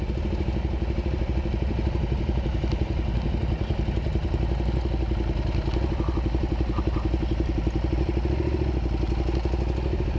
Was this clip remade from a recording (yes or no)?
no